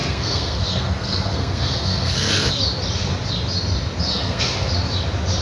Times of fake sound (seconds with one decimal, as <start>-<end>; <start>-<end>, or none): 0.0-2.5; 4.1-4.7